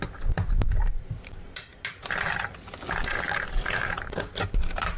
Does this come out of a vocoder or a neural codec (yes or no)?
no